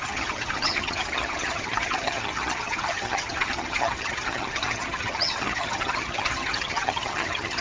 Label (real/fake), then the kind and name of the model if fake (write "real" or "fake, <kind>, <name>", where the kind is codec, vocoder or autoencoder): fake, vocoder, HiFi-GAN